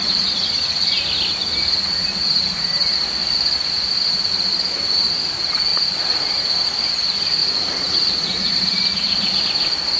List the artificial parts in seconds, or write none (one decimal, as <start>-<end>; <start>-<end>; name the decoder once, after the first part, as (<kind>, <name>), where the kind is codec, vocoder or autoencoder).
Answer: 3.2-4.2 (vocoder, BigVGAN v2); 5.7-6.9; 7.4-9.4